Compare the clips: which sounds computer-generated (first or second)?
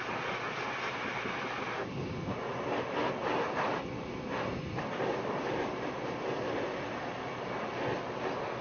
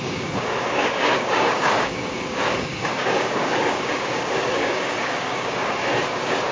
second